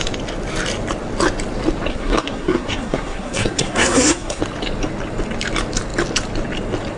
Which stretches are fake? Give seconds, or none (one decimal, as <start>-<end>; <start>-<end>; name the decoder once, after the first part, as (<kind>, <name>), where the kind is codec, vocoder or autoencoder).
1.9-4.4 (codec, SNAC)